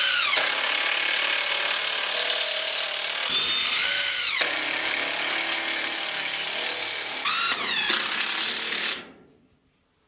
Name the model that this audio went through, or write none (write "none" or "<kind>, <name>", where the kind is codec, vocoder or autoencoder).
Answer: none